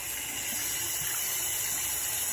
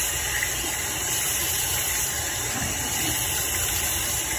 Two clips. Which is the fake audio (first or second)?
second